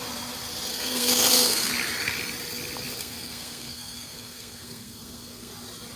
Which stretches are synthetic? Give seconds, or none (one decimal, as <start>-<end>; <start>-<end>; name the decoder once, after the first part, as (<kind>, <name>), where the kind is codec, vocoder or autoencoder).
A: 0.7-1.7 (codec, SNAC); 3.0-5.5